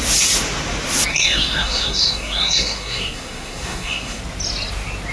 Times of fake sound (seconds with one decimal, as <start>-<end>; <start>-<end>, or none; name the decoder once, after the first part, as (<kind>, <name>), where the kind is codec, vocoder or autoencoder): 1.1-4.2 (codec, SNAC)